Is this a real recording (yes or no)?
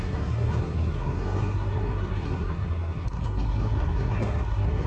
no